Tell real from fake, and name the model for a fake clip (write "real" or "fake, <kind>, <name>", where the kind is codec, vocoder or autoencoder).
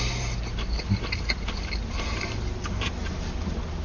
real